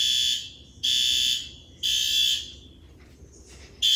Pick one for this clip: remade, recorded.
recorded